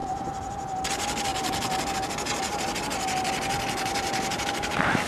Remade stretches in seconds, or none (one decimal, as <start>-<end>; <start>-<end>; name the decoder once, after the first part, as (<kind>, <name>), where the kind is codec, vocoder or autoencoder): 0.0-5.1 (vocoder, BigVGAN v2)